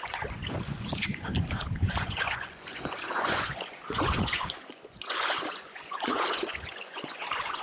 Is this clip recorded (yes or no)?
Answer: no